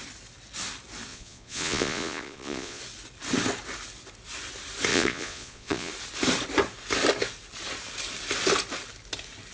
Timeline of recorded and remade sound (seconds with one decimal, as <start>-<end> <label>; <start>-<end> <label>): 0.0-1.1 recorded; 1.1-2.8 remade; 2.8-4.9 recorded; 4.9-5.9 remade; 5.9-9.5 recorded